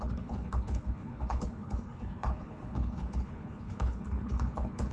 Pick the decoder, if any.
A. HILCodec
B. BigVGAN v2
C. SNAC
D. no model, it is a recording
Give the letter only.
A